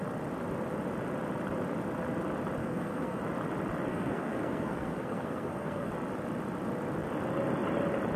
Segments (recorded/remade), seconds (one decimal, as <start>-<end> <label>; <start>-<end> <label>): 0.0-2.6 recorded; 2.6-3.2 remade; 3.2-3.9 recorded; 3.9-5.9 remade; 5.9-8.2 recorded